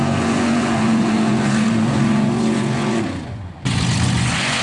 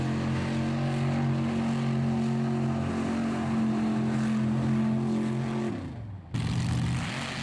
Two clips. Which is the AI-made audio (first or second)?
first